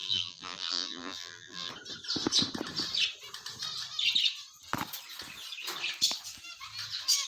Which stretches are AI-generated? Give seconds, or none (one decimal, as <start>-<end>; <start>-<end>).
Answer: 0.0-1.7